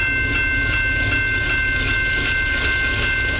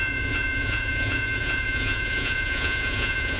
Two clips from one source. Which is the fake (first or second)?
second